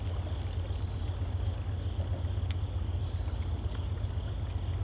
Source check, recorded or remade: recorded